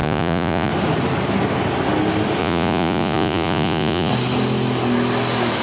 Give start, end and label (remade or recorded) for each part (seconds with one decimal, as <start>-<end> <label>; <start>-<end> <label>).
0.0-0.7 remade; 0.7-2.4 recorded; 2.4-4.1 remade; 4.1-5.6 recorded